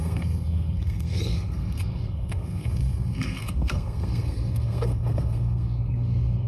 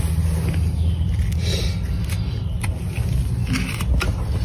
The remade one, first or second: first